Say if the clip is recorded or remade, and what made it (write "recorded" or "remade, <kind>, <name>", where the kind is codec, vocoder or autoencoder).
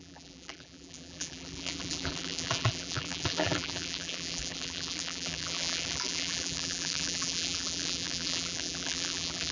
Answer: remade, vocoder, BigVGAN v2